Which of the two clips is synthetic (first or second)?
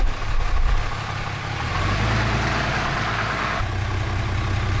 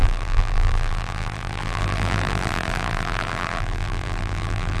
second